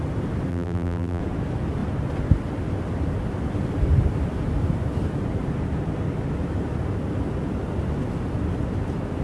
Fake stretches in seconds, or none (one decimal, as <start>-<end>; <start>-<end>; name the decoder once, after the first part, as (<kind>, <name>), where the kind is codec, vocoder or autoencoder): 0.5-1.2 (vocoder, BigVGAN v2)